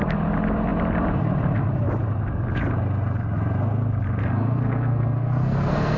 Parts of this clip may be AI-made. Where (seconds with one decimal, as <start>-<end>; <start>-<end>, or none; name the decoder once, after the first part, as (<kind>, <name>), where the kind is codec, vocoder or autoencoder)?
4.2-6.0 (codec, SNAC)